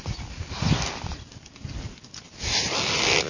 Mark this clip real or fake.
real